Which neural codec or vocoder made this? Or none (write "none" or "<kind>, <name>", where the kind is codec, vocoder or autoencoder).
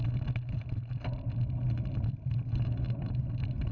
none